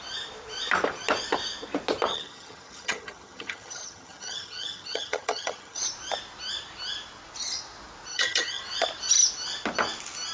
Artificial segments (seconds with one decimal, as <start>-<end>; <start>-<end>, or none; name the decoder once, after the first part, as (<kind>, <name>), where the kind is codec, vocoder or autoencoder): 2.1-5.8 (vocoder, HiFi-GAN); 8.1-8.6